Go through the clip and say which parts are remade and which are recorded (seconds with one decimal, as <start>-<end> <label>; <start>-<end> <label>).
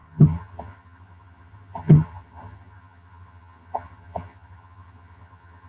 0.0-5.7 remade